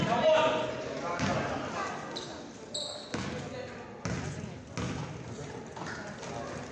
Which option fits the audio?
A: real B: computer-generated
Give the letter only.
A